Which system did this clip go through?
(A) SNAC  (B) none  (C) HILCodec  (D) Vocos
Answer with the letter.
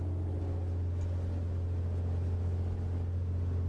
B